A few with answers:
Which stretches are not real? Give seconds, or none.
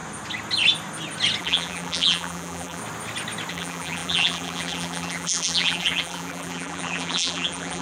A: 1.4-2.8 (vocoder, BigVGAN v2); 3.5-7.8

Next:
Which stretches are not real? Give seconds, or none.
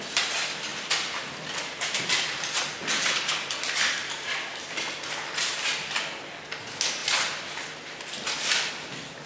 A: 0.7-4.6 (vocoder, BigVGAN v2); 7.0-8.7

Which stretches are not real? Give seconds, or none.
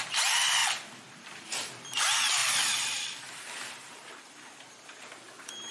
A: 0.0-2.4 (vocoder, BigVGAN v2); 3.0-5.7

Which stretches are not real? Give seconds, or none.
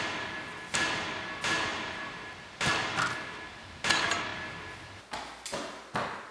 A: 1.7-2.4 (vocoder, BigVGAN v2)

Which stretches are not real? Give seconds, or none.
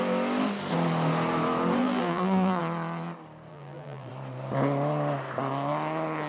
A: 1.8-2.6 (vocoder, BigVGAN v2); 3.5-4.1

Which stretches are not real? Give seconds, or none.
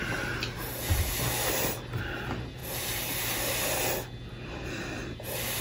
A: 2.6-3.4 (vocoder, BigVGAN v2)